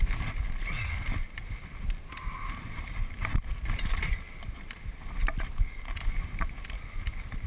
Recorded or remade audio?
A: recorded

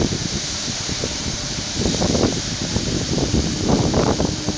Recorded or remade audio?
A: remade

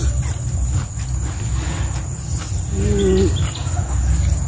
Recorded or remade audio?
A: recorded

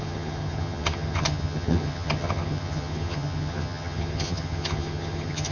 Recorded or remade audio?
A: remade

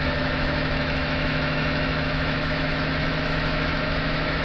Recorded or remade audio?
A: remade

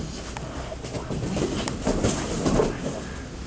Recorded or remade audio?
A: recorded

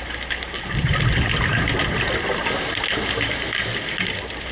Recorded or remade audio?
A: recorded